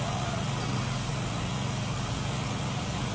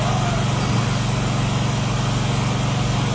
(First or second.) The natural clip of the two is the second